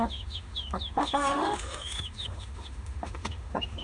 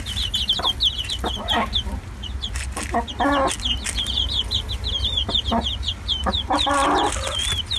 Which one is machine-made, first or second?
first